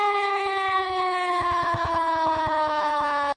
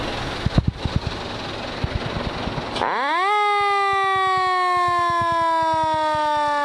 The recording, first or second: second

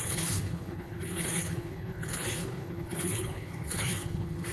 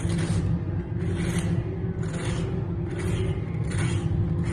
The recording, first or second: second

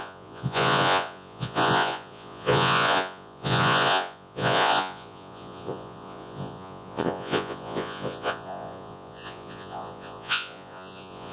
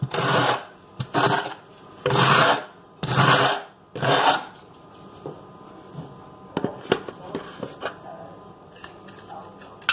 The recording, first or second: second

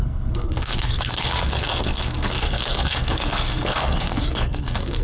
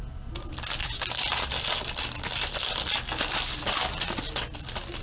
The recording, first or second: second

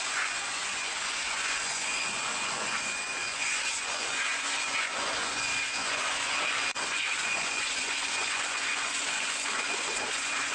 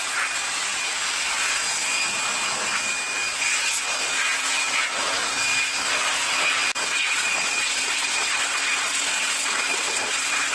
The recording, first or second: second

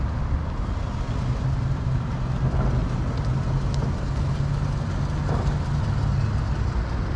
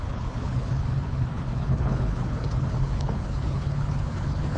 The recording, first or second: first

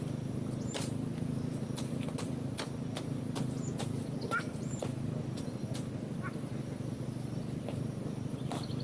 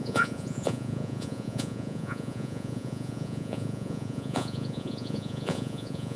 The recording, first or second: first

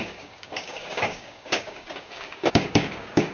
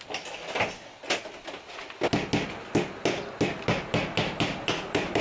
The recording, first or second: second